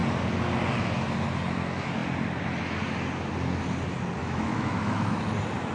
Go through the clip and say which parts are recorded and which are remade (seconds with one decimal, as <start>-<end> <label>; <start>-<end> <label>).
0.0-4.2 recorded; 4.2-5.2 remade; 5.2-5.7 recorded